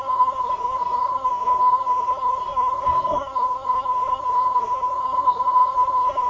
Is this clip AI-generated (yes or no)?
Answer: yes